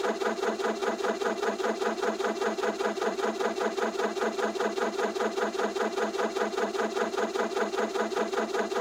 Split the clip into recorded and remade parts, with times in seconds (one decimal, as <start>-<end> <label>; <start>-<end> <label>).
0.0-0.8 recorded; 0.8-3.6 remade; 3.6-8.8 recorded